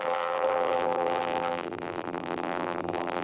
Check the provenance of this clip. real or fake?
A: fake